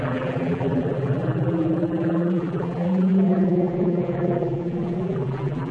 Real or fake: fake